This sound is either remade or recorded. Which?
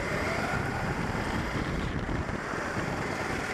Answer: remade